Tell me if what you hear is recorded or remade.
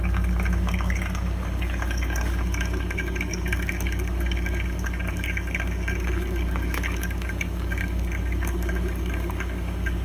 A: remade